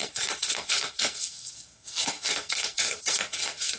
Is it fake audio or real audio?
fake